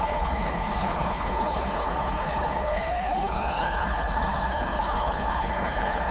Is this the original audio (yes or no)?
no